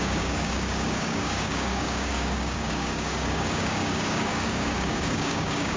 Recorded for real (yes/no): no